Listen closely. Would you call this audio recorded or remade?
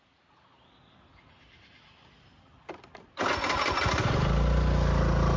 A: recorded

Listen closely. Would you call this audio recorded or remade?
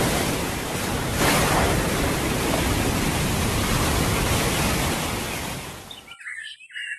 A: recorded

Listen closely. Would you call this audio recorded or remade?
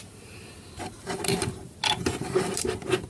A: recorded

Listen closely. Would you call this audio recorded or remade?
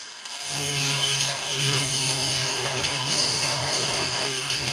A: remade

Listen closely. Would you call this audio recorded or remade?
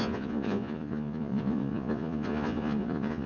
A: remade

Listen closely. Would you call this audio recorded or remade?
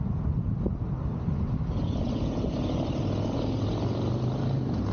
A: recorded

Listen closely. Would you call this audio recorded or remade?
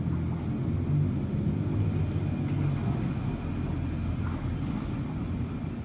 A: recorded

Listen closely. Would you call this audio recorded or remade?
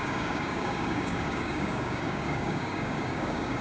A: remade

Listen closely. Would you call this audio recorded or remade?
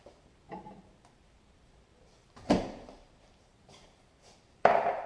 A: remade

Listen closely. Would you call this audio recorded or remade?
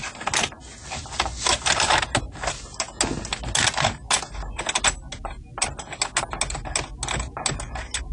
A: recorded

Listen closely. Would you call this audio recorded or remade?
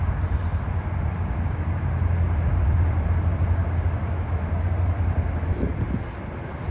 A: remade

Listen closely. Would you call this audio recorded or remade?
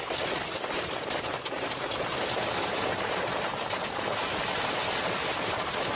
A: remade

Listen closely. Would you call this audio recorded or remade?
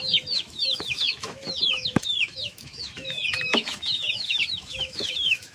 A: remade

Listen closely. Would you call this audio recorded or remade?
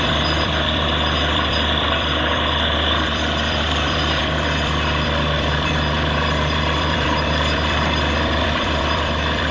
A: remade